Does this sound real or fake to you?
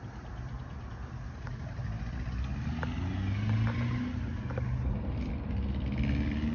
real